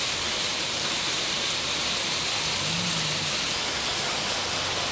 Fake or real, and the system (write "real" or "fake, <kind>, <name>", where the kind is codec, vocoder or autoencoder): real